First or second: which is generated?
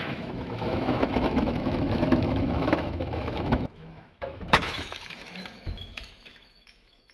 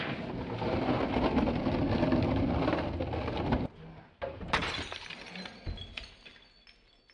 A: first